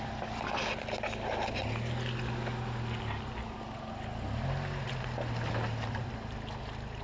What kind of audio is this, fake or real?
real